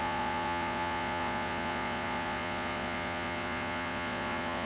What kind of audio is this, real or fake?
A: fake